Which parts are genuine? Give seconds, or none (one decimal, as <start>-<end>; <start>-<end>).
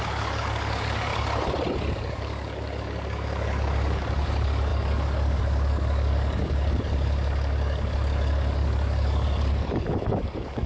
1.1-1.9